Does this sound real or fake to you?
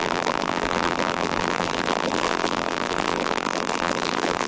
fake